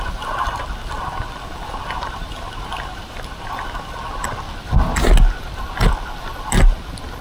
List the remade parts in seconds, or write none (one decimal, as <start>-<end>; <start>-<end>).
none